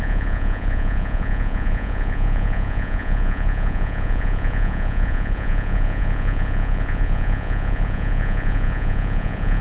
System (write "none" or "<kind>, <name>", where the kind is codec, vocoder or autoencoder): vocoder, Vocos